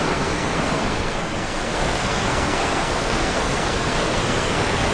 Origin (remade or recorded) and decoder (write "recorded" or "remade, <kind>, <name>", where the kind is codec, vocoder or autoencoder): remade, codec, SNAC